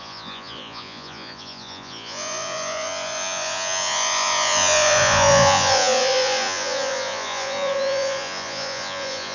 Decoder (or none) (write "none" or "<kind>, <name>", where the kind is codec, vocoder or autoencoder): vocoder, Vocos